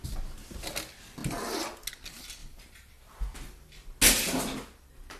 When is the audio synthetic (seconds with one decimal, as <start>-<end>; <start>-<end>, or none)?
2.4-3.7